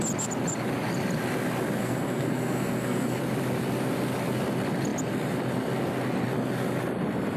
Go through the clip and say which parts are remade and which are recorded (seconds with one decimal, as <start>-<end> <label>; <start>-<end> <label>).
0.0-1.8 recorded; 1.8-3.2 remade; 3.2-7.4 recorded